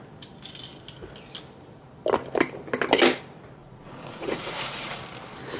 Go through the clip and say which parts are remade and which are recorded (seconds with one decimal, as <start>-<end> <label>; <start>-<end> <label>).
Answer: 0.0-3.6 recorded; 3.6-5.0 remade; 5.0-5.6 recorded